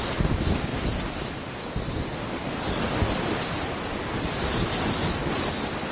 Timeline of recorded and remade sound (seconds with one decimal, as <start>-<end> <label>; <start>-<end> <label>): 0.0-0.7 remade; 0.7-4.2 recorded; 4.2-5.0 remade; 5.0-5.9 recorded